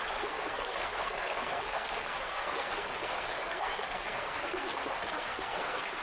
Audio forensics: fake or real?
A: fake